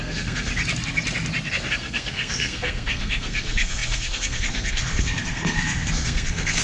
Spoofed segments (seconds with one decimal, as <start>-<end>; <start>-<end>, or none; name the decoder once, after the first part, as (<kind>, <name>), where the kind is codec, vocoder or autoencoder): 0.0-0.5 (codec, SNAC); 1.7-6.6